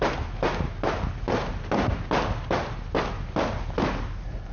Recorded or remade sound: recorded